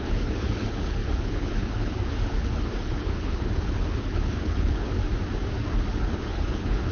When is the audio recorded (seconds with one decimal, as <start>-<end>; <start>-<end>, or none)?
5.0-6.0